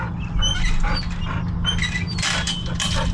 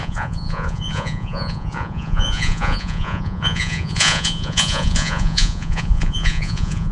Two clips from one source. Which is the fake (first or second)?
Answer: second